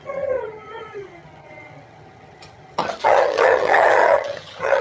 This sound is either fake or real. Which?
fake